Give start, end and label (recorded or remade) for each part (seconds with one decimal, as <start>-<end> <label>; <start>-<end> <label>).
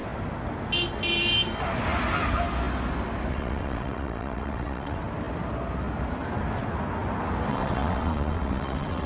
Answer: 0.0-3.3 recorded; 3.3-5.0 remade; 5.0-7.5 recorded; 7.5-9.1 remade